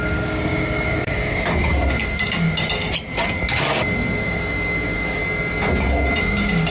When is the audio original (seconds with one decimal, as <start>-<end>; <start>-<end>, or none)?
2.8-4.2; 5.2-6.2